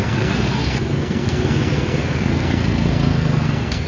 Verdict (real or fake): fake